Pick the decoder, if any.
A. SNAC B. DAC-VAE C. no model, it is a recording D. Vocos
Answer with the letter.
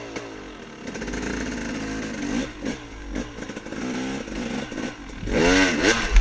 C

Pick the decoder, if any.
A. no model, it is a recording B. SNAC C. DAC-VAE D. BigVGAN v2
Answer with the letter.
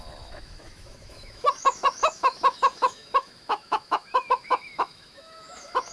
C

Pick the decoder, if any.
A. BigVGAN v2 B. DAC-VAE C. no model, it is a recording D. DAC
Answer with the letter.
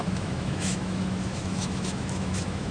B